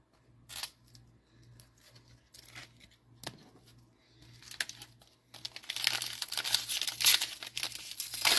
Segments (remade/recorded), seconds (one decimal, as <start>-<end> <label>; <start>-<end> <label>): 0.0-8.4 recorded